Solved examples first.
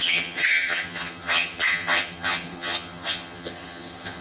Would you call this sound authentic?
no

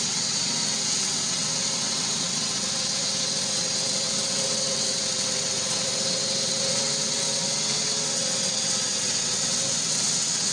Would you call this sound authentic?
no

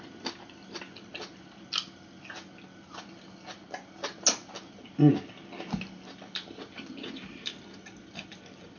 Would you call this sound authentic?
yes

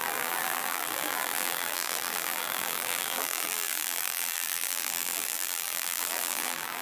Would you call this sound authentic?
no